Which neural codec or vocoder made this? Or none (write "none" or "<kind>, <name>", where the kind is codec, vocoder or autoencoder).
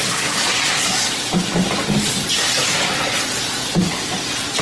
none